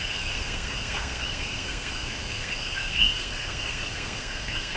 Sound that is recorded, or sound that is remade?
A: remade